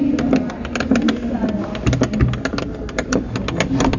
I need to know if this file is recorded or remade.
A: recorded